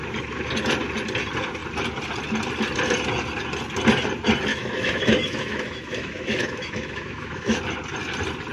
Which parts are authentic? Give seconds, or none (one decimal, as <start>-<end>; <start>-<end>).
0.0-4.5; 7.6-8.5